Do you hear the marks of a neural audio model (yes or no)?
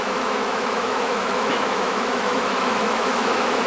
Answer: yes